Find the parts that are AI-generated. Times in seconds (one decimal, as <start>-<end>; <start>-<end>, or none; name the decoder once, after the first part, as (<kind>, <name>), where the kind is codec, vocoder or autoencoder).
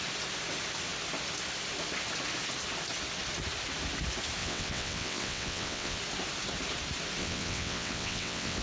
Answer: 4.4-6.0 (vocoder, WaveNeXt); 7.2-8.6